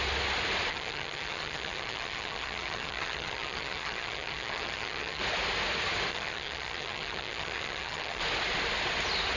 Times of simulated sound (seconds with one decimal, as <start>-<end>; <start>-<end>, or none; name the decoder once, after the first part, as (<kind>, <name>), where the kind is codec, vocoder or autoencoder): 0.7-5.2 (vocoder, HiFi-GAN); 6.1-8.2